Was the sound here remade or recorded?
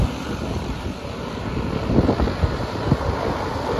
recorded